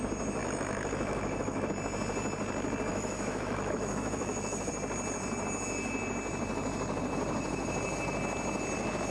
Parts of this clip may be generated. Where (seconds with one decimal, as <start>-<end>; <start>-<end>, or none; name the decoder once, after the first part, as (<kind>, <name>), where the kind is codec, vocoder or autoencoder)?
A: 0.4-1.7 (autoencoder, DAC-VAE); 2.9-4.7